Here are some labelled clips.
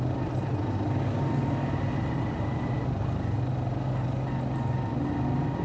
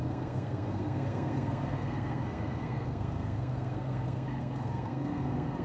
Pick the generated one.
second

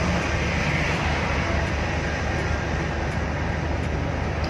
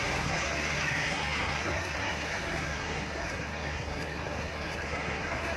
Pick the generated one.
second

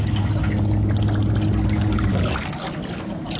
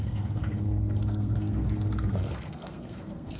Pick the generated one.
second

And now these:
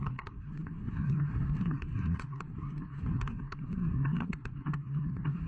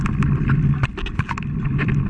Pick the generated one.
first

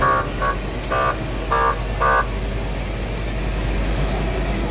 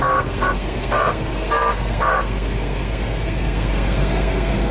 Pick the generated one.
second